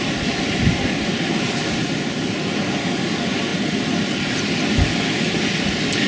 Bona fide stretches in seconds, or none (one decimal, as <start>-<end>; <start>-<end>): 0.0-6.1